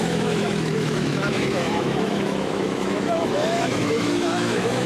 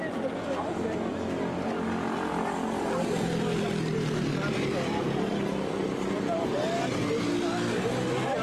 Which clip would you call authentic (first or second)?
second